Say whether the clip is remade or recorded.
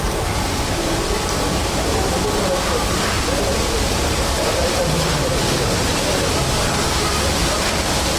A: remade